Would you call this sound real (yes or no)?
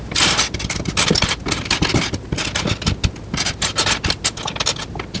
yes